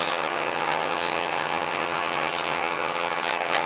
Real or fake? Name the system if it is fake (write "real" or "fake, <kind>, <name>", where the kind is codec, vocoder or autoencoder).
fake, vocoder, HiFi-GAN